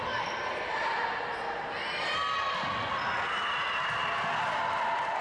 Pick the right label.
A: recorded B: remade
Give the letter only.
A